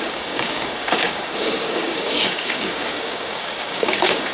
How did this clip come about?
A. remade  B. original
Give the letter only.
A